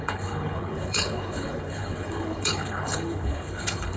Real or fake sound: fake